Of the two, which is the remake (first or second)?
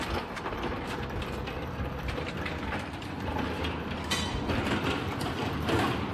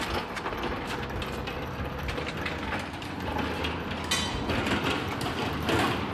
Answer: first